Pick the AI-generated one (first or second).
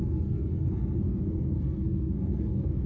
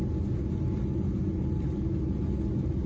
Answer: first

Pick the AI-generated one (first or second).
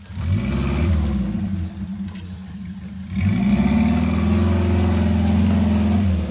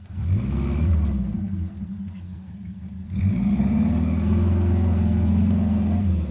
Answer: second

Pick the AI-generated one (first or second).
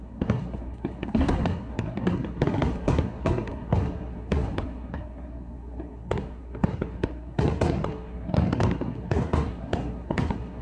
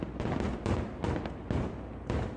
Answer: first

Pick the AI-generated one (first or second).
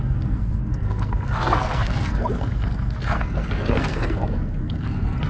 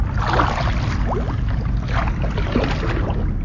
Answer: first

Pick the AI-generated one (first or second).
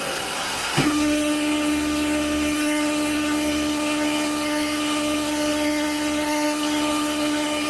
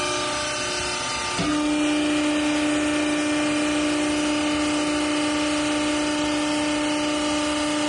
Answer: first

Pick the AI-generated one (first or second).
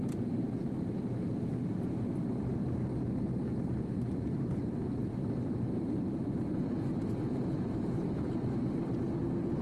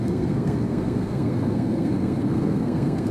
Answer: second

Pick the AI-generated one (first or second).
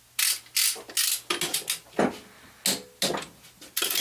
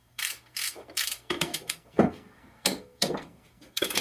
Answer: second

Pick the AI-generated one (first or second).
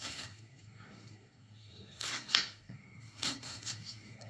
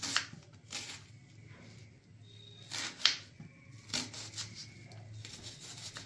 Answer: first